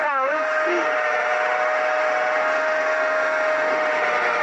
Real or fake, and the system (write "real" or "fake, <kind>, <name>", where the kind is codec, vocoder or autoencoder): fake, autoencoder, DAC-VAE